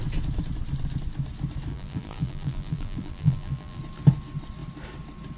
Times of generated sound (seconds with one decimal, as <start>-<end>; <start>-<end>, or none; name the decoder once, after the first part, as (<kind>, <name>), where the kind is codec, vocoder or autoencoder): 1.7-3.8 (vocoder, BigVGAN v2)